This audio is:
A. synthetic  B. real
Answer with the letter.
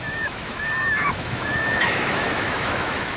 A